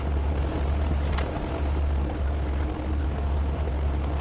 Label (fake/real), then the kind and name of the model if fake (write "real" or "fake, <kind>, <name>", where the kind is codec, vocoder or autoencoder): real